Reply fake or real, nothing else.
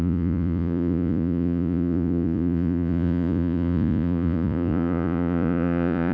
fake